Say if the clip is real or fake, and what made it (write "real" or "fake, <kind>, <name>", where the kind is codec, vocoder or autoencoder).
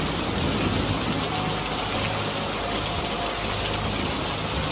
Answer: real